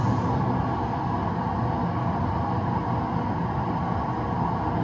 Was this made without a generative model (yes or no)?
yes